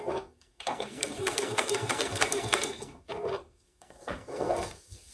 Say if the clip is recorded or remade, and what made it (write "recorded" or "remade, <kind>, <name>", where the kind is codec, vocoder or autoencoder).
remade, codec, SNAC